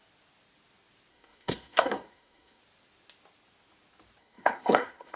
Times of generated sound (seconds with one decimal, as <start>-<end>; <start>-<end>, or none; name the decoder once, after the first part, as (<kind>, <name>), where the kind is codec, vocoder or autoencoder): 1.1-2.6 (codec, SNAC); 4.2-5.2